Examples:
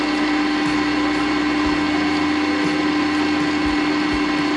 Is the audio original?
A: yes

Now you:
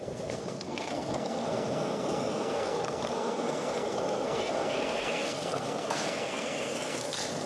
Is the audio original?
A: no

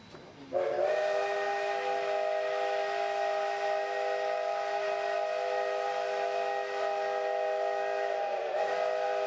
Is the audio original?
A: yes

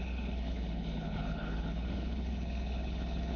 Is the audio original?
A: no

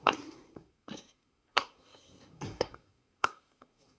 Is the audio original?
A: no